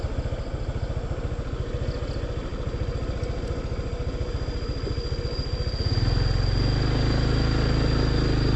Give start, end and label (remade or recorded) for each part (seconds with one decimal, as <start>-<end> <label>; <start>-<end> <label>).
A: 0.0-8.6 recorded